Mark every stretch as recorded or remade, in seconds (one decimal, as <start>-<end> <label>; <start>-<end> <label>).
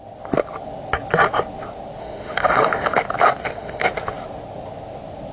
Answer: 0.0-2.0 recorded; 2.0-3.0 remade; 3.0-3.4 recorded; 3.4-3.9 remade; 3.9-5.3 recorded